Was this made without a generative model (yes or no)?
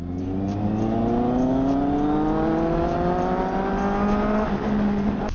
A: yes